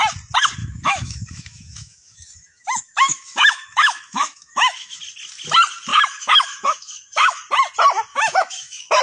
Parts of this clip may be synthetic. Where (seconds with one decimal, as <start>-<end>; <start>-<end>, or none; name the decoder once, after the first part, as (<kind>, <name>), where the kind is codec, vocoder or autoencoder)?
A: 0.6-5.0 (autoencoder, DAC-VAE); 5.9-7.4; 8.1-9.0